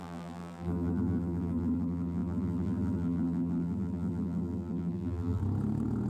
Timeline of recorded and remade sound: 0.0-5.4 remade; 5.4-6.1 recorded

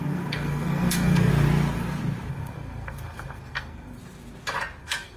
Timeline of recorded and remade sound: 0.0-1.3 remade; 1.3-2.3 recorded; 2.3-4.0 remade; 4.0-4.8 recorded; 4.8-5.2 remade

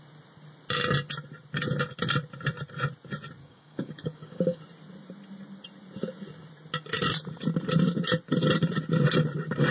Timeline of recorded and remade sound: 0.0-3.4 recorded; 3.4-4.6 remade; 4.6-9.7 recorded

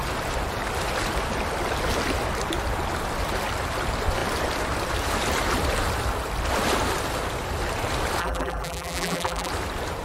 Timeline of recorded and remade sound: 0.0-8.2 recorded; 8.2-9.5 remade; 9.5-10.0 recorded

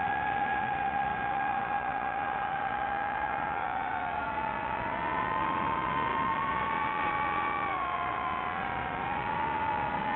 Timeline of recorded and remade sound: 0.0-10.2 remade

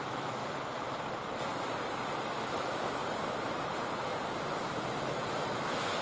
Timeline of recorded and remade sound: 0.0-0.4 remade; 0.4-2.3 recorded; 2.3-3.0 remade; 3.0-4.9 recorded; 4.9-6.0 remade